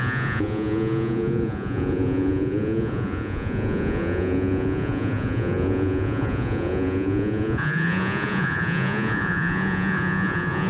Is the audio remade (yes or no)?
yes